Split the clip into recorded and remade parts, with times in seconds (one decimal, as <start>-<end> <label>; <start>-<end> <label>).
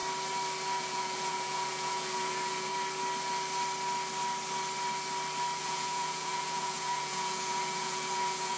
0.0-0.8 recorded; 0.8-2.7 remade; 2.7-5.6 recorded; 5.6-8.6 remade